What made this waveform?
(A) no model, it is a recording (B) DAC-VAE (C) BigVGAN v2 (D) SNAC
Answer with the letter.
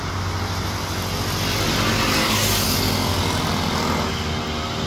A